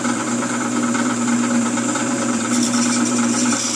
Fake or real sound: fake